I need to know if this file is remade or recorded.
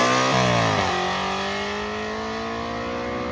recorded